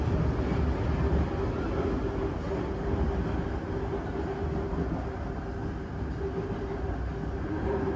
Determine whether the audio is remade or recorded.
recorded